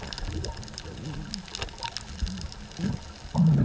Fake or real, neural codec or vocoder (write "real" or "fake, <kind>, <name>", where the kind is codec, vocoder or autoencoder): real